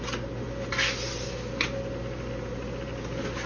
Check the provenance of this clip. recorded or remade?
recorded